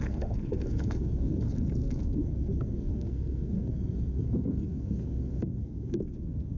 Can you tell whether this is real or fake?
fake